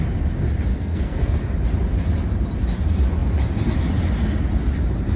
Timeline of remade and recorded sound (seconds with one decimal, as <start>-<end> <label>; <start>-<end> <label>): 0.0-0.7 recorded; 0.7-1.4 remade; 1.4-5.2 recorded